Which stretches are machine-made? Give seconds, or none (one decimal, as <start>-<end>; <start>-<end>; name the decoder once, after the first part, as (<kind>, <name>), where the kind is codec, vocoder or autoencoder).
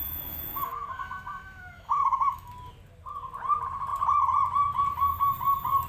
0.0-2.5 (autoencoder, DAC-VAE)